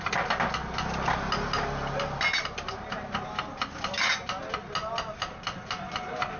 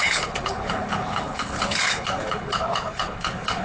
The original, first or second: first